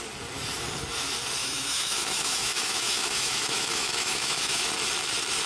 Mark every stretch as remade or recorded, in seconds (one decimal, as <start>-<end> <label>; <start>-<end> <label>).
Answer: 0.0-1.4 recorded; 1.4-4.7 remade; 4.7-5.5 recorded